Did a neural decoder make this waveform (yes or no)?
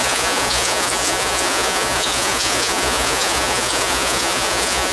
yes